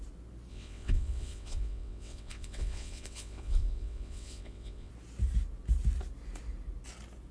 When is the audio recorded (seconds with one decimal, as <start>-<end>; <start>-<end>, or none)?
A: 0.0-0.5; 4.9-7.3